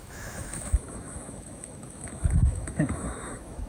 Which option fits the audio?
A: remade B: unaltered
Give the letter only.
A